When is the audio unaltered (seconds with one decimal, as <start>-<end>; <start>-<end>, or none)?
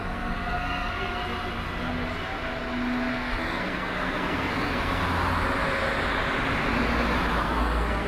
1.2-3.1; 5.0-7.4